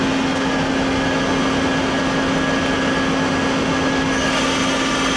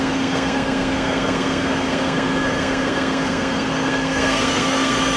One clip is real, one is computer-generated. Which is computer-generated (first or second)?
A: second